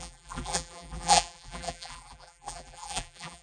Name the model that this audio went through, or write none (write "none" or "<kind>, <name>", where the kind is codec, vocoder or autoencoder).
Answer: vocoder, BigVGAN v2